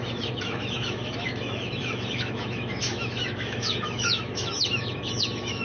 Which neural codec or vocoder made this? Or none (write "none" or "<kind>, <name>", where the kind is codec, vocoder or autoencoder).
autoencoder, DAC-VAE